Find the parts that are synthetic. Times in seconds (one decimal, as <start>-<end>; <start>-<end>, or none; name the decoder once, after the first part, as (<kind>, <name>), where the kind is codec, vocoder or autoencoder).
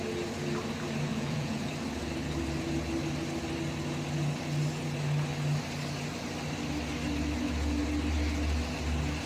1.1-1.7 (vocoder, Vocos)